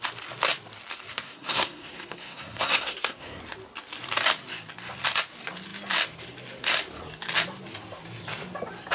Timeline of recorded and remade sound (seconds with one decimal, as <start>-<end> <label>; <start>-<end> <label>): 0.0-1.1 recorded; 1.1-3.4 remade; 3.4-8.9 recorded